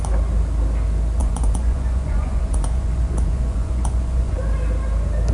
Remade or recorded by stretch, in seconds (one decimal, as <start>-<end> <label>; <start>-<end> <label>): 0.0-1.2 recorded; 1.2-4.4 remade; 4.4-5.3 recorded